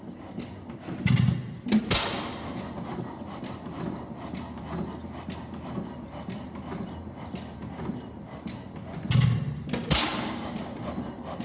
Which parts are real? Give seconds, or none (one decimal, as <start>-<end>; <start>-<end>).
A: 0.0-11.4